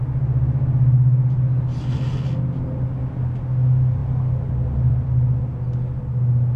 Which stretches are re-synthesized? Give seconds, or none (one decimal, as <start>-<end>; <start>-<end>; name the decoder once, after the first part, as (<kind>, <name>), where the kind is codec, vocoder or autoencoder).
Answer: none